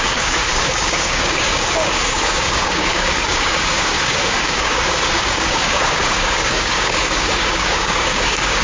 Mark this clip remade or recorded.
remade